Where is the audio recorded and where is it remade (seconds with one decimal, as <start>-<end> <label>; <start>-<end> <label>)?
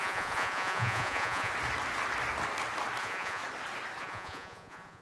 0.0-1.5 remade; 1.5-3.0 recorded; 3.0-3.4 remade; 3.4-4.0 recorded; 4.0-5.0 remade